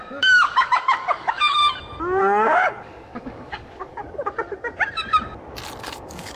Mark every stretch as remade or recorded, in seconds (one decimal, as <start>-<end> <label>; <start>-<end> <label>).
0.0-1.6 remade; 1.6-2.2 recorded; 2.2-4.0 remade; 4.0-5.8 recorded; 5.8-6.4 remade